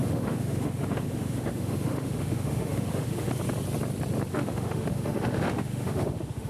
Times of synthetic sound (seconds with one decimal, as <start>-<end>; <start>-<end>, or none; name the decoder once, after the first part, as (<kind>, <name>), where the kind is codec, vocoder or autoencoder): 0.0-3.3 (autoencoder, DAC-VAE); 4.3-6.5